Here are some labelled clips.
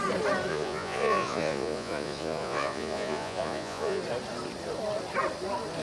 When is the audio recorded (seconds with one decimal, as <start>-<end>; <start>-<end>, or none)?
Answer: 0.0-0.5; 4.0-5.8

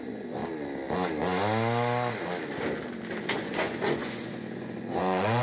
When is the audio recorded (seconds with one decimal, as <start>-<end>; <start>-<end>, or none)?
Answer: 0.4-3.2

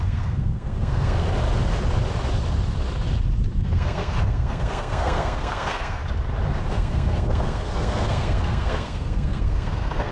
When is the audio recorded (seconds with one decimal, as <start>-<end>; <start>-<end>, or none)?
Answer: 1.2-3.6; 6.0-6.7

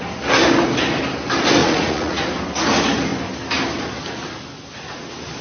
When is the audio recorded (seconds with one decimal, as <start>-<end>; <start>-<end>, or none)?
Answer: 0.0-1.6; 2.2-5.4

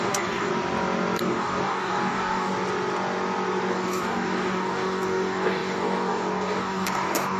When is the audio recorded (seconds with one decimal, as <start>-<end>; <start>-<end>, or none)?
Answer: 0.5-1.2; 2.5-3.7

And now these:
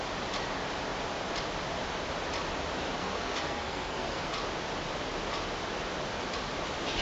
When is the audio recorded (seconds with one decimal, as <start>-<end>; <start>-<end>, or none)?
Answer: 0.0-3.0; 4.3-7.0

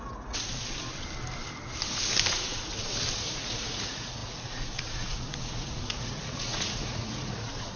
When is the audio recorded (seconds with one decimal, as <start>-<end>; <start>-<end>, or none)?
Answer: 0.5-2.3; 2.7-3.3

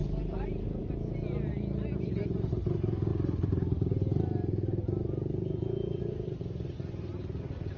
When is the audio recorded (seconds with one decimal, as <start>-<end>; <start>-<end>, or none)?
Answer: 1.5-7.8